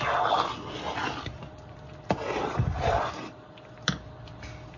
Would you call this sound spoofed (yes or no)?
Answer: no